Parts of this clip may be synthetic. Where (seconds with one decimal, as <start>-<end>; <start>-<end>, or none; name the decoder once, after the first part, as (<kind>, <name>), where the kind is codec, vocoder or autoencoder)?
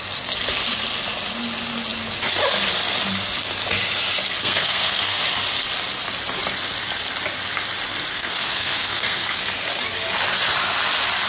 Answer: 4.4-5.2 (codec, SNAC); 8.1-9.4